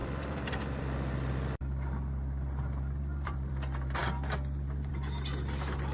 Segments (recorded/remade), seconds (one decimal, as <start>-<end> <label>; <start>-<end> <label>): 0.0-3.5 remade; 3.5-5.9 recorded